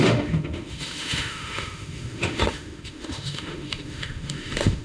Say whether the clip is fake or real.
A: fake